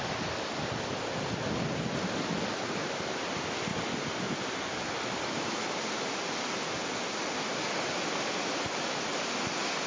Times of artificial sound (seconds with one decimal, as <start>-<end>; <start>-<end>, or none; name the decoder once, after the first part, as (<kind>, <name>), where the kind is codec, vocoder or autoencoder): none